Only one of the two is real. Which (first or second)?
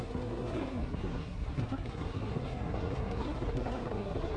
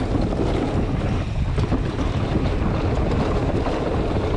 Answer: second